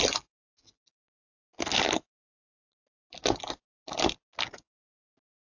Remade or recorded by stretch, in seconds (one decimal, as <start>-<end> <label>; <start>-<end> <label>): 0.0-5.6 recorded

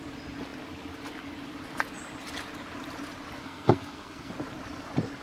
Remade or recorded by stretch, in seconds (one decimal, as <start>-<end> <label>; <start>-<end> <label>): 0.0-3.4 recorded; 3.4-4.3 remade; 4.3-5.2 recorded

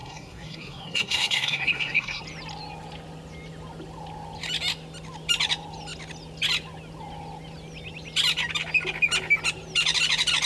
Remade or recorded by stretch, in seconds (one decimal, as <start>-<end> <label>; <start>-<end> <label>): 0.0-2.2 remade; 2.2-10.5 recorded

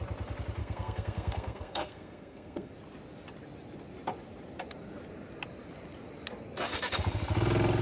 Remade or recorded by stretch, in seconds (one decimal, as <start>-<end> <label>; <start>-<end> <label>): 0.0-0.6 recorded; 0.6-2.7 remade; 2.7-7.8 recorded